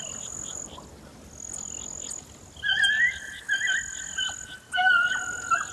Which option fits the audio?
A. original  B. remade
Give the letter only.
A